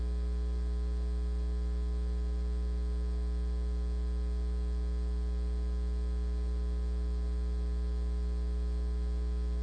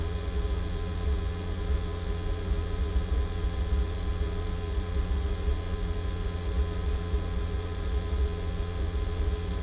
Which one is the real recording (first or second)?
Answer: first